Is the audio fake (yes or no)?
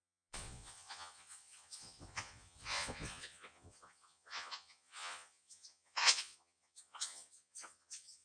yes